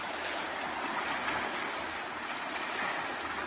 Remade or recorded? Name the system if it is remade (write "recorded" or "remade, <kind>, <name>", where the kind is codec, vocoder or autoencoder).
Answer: recorded